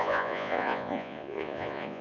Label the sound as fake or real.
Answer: fake